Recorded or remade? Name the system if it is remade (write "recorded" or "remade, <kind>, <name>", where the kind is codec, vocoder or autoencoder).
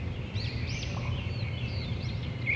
remade, vocoder, BigVGAN v2